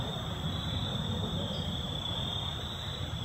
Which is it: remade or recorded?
recorded